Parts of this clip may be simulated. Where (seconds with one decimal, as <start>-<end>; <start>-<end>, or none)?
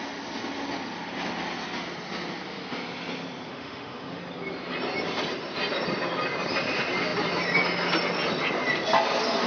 3.5-4.2